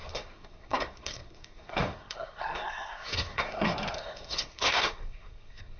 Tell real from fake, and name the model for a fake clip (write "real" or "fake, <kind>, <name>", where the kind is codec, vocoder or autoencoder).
fake, codec, SNAC